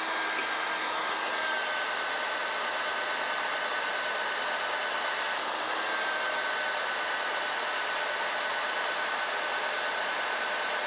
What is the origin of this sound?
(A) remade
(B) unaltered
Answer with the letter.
B